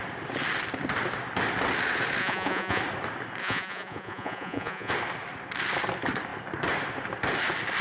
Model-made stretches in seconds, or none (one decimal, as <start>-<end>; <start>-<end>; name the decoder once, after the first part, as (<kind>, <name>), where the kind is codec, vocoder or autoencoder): 2.2-2.8 (vocoder, Vocos); 3.4-4.9